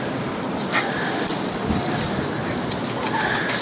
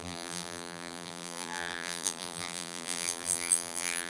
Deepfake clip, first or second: second